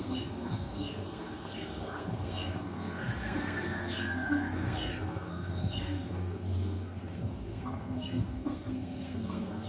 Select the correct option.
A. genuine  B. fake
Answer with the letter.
B